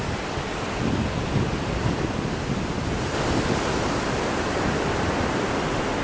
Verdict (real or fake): real